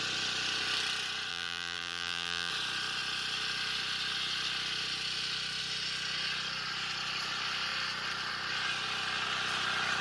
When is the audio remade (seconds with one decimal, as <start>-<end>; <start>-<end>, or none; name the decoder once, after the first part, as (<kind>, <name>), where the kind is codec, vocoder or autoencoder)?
1.3-2.5 (vocoder, BigVGAN v2)